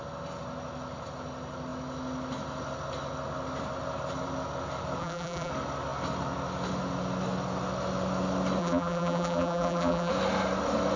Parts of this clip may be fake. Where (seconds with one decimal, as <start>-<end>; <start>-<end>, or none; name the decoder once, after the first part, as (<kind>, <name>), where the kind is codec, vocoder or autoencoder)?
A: 5.0-5.5 (vocoder, BigVGAN v2); 8.6-10.1